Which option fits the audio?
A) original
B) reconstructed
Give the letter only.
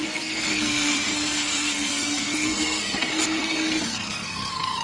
B